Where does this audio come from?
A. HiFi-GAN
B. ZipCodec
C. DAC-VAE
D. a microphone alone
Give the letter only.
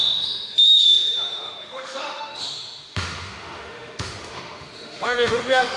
C